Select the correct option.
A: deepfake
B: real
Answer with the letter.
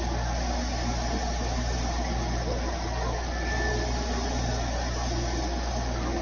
B